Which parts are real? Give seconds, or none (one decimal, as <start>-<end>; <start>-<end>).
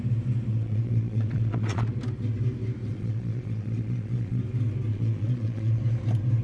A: 0.0-0.5; 1.9-2.9; 4.4-4.9; 5.8-6.4